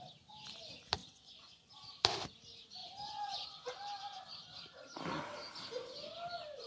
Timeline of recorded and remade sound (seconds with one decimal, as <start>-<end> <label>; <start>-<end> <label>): 0.0-1.0 recorded; 1.0-1.7 remade; 1.7-2.8 recorded; 2.8-3.7 remade; 3.7-6.7 recorded